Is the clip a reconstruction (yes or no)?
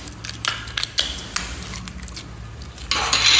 no